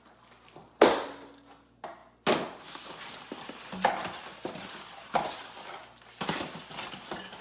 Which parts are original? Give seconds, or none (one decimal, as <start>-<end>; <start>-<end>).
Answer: 0.0-7.4